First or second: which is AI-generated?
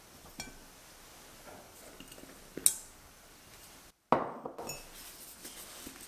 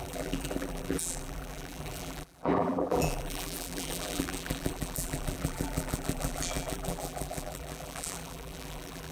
second